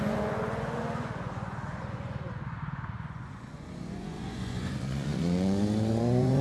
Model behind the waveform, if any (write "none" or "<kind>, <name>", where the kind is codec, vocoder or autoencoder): vocoder, Vocos